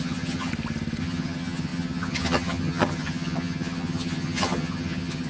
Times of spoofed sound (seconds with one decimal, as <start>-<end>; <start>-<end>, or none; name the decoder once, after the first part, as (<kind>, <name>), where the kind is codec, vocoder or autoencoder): 0.0-0.5 (vocoder, HiFi-GAN); 1.0-5.3